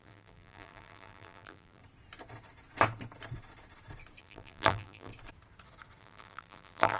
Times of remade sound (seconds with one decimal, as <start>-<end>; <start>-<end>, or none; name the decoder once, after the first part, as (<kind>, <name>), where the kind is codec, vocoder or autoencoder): 0.0-1.8 (vocoder, BigVGAN v2); 4.2-5.1; 6.0-7.0